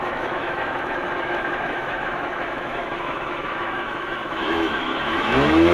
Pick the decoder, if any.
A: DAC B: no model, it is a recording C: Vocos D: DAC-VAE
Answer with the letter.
D